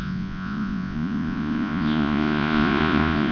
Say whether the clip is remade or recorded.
remade